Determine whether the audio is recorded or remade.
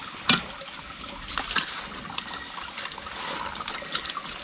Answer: recorded